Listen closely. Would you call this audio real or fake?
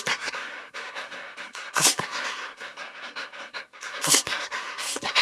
fake